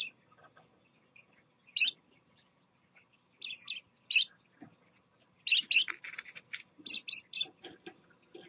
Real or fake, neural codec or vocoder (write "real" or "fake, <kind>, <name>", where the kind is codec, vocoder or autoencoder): real